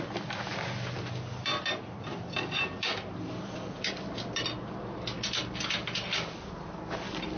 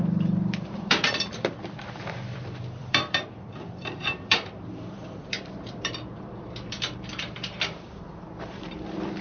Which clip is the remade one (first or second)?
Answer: second